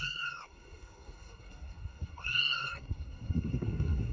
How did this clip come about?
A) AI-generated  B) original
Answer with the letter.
A